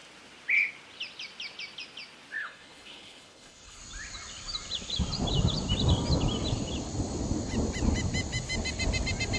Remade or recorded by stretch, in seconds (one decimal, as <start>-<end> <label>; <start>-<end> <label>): 0.0-2.4 recorded; 2.4-3.8 remade; 3.8-9.4 recorded